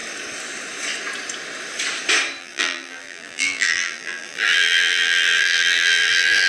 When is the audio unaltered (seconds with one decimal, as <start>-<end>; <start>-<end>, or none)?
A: 0.0-2.4